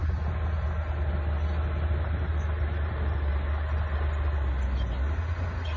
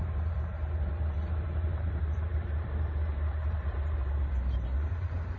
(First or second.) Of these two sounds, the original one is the first